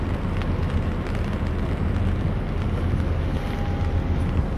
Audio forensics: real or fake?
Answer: real